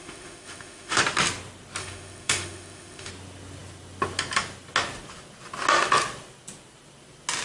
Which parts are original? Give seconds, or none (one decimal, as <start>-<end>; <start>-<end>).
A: 1.0-1.8; 3.1-7.4